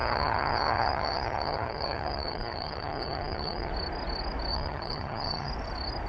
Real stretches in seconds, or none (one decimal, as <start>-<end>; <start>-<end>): 3.7-4.5; 5.5-6.1